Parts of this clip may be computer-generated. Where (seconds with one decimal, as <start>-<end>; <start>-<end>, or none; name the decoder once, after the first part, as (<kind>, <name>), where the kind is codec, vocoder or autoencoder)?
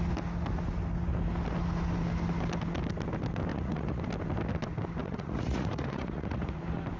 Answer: 3.5-4.0 (vocoder, Vocos); 5.0-6.6